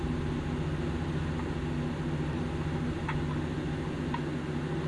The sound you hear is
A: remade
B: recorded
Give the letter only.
B